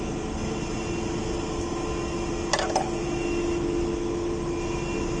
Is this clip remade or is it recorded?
recorded